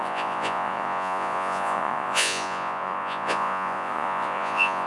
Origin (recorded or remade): remade